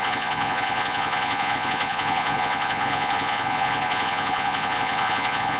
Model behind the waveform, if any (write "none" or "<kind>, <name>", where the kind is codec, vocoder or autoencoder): vocoder, Vocos